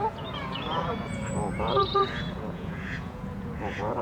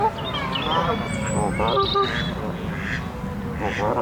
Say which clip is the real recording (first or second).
second